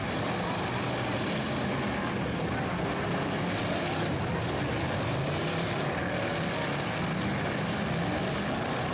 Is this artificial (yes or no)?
no